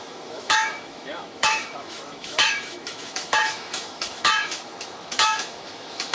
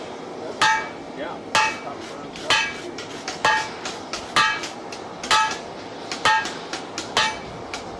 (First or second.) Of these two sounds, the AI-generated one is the first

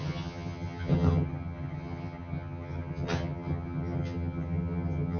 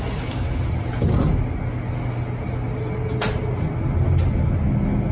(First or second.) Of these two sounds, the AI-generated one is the first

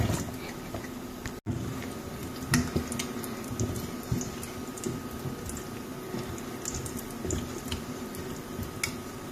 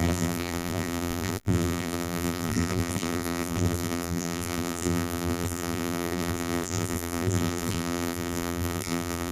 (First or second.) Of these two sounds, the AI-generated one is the second